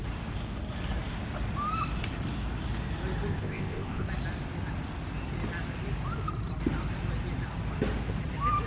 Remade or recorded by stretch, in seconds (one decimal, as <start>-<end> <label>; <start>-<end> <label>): 0.0-3.3 recorded; 3.3-4.1 remade; 4.1-8.7 recorded